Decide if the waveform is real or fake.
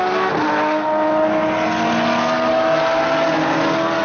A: real